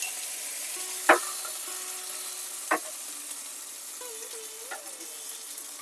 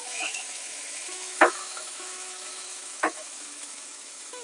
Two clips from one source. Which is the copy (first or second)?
second